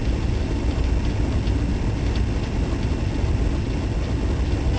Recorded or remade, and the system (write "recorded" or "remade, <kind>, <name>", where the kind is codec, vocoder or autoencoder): recorded